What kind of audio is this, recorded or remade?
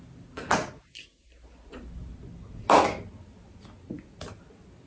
recorded